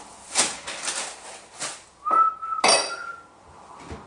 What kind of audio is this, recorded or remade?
recorded